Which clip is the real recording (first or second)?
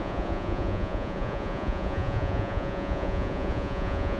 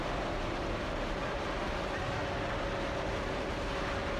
second